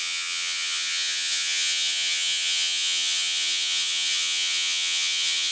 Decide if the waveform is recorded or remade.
remade